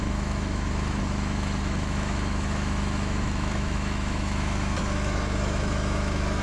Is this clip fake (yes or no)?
yes